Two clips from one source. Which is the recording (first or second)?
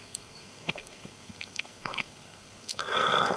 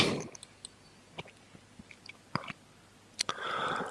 second